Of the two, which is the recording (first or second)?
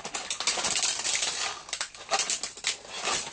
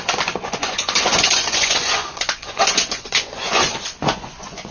first